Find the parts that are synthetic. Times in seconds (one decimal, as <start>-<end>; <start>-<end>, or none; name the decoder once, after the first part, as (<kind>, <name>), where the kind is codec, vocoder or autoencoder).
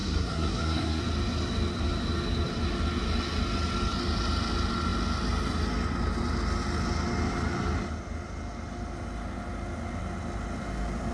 0.0-1.0 (codec, SNAC)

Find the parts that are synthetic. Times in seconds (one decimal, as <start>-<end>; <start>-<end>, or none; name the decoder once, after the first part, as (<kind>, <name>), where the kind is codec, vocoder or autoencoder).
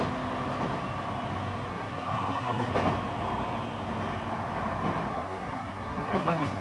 1.7-2.7 (codec, SNAC); 5.1-6.6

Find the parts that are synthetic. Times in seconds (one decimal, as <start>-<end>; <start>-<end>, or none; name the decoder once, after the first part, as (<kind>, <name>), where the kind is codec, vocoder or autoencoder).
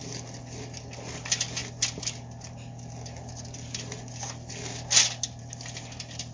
none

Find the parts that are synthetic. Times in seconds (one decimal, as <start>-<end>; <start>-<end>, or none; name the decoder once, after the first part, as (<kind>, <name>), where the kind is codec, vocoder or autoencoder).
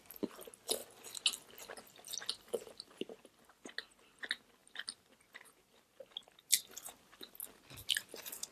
none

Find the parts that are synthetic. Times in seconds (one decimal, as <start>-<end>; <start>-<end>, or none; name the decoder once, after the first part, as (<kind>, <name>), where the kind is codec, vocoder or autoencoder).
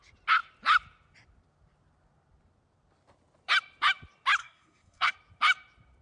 4.4-5.1 (codec, SNAC)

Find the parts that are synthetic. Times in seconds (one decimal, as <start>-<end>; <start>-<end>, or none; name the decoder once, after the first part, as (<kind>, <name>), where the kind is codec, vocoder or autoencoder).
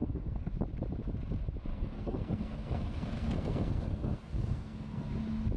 0.0-0.5 (codec, SNAC); 1.7-5.1